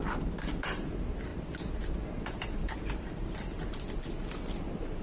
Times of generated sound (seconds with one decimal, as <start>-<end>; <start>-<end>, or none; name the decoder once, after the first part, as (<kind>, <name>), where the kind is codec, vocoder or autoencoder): 2.6-3.6 (vocoder, BigVGAN v2)

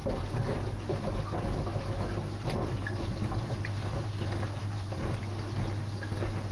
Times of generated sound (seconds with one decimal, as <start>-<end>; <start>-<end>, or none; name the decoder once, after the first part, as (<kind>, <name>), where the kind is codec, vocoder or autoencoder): 0.0-0.6 (vocoder, BigVGAN v2); 1.7-4.1; 4.6-5.2

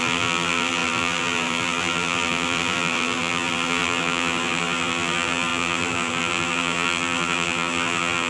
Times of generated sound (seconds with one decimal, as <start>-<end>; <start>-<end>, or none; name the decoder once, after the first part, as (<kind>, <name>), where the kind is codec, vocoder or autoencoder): 0.0-8.3 (vocoder, BigVGAN v2)

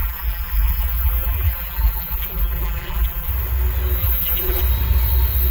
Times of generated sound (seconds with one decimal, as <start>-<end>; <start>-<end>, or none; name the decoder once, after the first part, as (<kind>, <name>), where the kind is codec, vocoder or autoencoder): 0.0-3.3 (vocoder, BigVGAN v2); 4.0-4.6

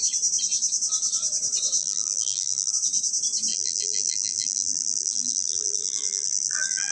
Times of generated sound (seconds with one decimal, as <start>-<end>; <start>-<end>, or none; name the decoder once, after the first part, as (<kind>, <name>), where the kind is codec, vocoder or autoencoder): 1.8-2.7 (vocoder, BigVGAN v2); 3.5-6.9

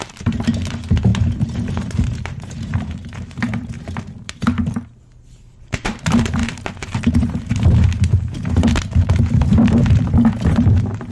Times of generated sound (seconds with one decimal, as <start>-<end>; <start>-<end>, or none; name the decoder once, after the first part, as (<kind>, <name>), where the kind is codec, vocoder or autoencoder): 0.0-11.1 (vocoder, BigVGAN v2)

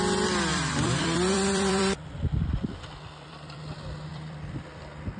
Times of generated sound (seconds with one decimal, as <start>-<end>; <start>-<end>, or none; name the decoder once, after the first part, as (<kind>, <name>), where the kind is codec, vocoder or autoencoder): 0.5-3.6 (vocoder, BigVGAN v2); 4.1-4.8